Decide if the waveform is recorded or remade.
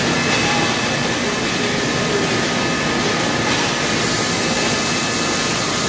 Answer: recorded